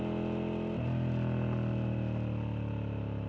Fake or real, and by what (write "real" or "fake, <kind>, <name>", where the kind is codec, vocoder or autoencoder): real